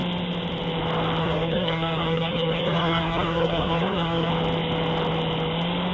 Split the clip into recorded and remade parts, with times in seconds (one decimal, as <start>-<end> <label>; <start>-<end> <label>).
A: 0.0-1.2 recorded; 1.2-4.3 remade; 4.3-5.9 recorded